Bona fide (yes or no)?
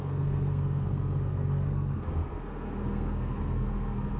no